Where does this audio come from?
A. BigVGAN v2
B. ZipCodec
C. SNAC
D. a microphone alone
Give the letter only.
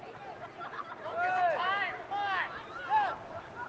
D